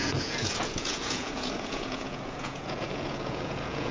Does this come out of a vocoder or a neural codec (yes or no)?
yes